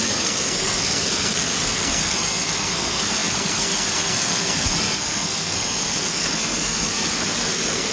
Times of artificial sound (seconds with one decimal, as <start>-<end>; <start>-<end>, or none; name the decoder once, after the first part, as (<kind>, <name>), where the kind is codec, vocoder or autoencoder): 0.0-7.9 (codec, SNAC)